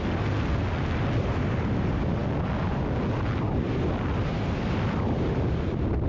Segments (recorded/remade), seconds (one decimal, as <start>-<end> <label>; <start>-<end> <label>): 0.0-6.1 recorded